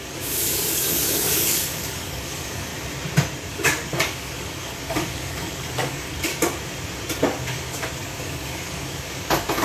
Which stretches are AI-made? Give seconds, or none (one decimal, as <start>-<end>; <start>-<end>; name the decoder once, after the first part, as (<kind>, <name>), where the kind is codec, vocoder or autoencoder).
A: 0.0-2.7 (codec, DAC); 3.5-6.3; 7.2-9.6

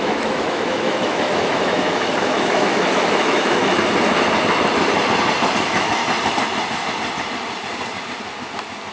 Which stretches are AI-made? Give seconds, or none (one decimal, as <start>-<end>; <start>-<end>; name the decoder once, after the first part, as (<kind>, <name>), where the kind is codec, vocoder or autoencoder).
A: 0.0-3.6 (autoencoder, DAC-VAE); 5.6-6.0

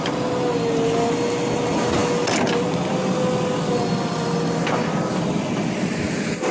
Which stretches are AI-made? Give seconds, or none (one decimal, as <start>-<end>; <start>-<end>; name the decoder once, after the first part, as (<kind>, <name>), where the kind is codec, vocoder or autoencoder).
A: none

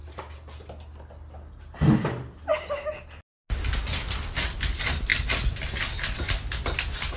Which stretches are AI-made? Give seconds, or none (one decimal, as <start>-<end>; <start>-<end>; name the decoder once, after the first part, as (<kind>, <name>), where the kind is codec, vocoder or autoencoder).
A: none

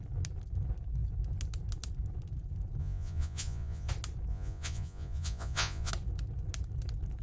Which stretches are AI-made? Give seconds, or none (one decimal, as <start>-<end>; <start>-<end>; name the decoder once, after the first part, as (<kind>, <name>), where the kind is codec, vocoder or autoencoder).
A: 2.8-3.9 (vocoder, Vocos); 4.3-5.9

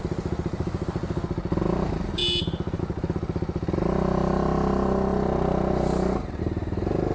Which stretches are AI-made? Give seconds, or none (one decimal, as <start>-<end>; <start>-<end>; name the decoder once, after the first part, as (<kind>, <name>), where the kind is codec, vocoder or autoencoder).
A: none

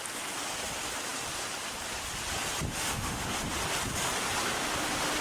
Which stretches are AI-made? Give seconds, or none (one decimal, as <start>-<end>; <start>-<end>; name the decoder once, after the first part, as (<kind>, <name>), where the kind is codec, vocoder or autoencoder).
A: 2.7-3.2 (autoencoder, DAC-VAE)